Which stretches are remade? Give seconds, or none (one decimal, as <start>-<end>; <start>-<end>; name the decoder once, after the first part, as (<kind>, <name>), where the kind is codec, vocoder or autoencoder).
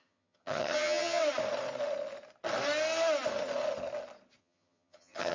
0.0-1.2 (vocoder, HiFi-GAN); 4.4-5.3